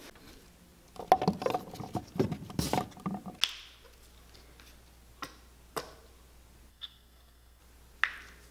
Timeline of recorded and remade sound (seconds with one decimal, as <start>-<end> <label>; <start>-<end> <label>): 0.0-6.7 recorded; 6.7-7.6 remade; 7.6-8.5 recorded